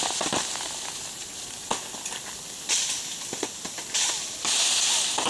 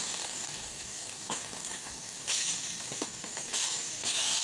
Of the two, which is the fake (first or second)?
second